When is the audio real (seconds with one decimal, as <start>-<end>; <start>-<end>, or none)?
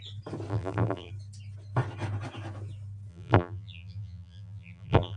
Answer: 0.0-0.5; 1.1-3.1